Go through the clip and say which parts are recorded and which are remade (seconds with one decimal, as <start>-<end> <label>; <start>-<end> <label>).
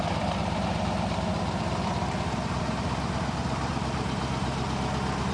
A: 0.0-5.3 recorded